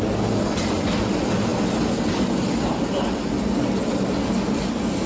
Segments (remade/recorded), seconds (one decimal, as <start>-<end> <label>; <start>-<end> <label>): 0.0-5.1 recorded